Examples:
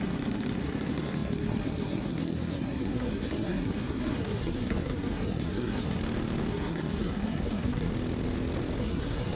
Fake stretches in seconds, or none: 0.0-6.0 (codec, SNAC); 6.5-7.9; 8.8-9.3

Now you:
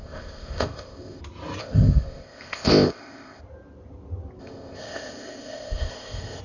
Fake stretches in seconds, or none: 0.0-1.2 (codec, ZipCodec); 1.6-3.4; 4.4-6.4

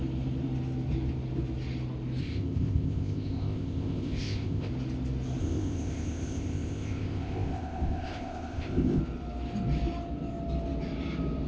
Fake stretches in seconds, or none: 2.2-4.7 (codec, ZipCodec); 5.4-9.0

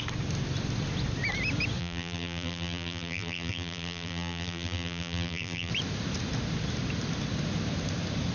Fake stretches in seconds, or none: 1.8-5.7 (vocoder, BigVGAN v2)

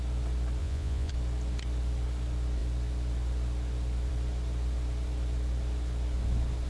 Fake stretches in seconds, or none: 0.6-1.1 (vocoder, Vocos)

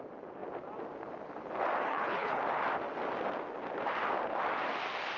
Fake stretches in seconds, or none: 1.8-2.4 (codec, HILCodec)